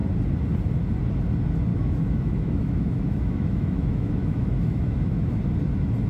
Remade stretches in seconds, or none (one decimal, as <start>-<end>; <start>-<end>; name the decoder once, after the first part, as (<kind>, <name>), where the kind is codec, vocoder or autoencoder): 1.7-5.4 (autoencoder, DAC-VAE)